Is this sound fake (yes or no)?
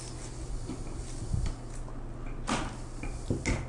no